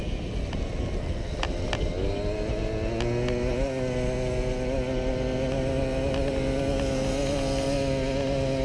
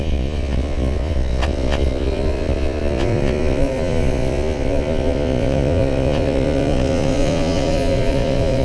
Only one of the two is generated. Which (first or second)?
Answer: second